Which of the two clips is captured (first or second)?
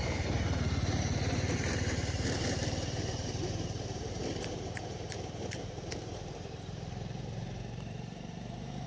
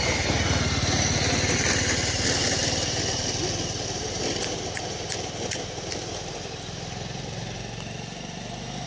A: second